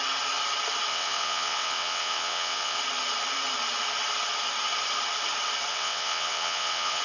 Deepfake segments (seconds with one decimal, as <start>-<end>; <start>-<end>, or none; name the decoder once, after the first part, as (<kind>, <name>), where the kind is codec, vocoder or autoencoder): 0.9-2.8 (vocoder, WaveNeXt); 5.7-7.0